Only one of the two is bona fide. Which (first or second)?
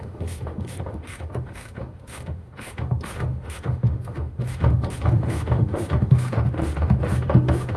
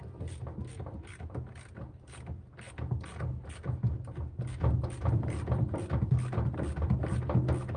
second